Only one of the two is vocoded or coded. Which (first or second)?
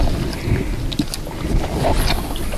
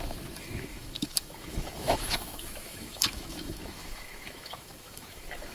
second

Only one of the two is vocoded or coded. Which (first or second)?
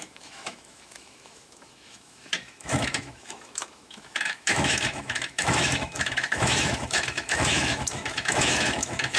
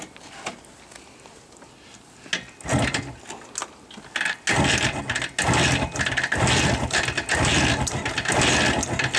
first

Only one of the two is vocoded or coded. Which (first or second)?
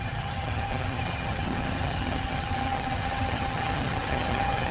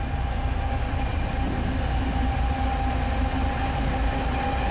first